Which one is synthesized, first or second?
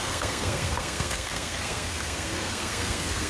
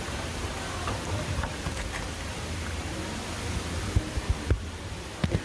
first